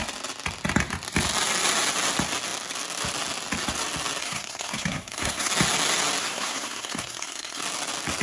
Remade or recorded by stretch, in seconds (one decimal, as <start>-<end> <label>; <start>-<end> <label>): 0.0-4.2 recorded; 4.2-5.5 remade; 5.5-6.2 recorded; 6.2-7.6 remade; 7.6-8.2 recorded